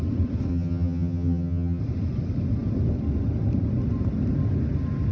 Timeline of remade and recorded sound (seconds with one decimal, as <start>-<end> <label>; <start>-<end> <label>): 0.0-0.5 recorded; 0.5-1.8 remade; 1.8-5.1 recorded